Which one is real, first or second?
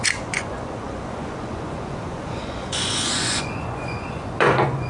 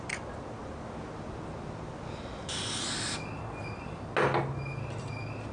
second